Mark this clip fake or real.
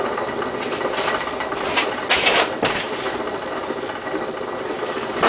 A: real